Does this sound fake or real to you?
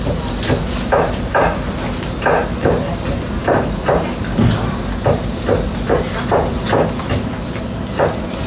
real